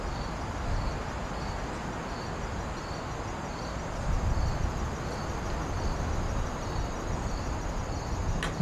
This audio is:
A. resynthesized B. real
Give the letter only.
B